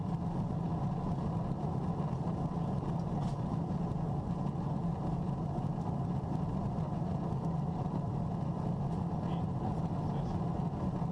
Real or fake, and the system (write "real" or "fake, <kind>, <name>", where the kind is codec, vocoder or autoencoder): real